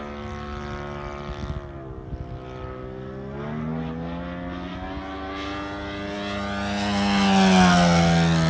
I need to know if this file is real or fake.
real